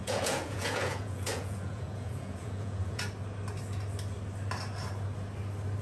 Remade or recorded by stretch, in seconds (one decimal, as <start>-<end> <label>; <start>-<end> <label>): 0.0-3.0 remade; 3.0-5.8 recorded